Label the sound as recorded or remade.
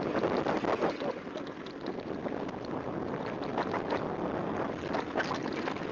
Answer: recorded